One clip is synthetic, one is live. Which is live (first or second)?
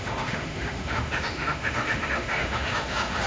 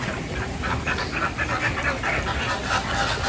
second